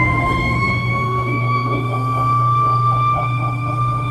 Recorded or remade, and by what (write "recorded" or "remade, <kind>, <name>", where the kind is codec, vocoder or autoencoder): remade, autoencoder, DAC-VAE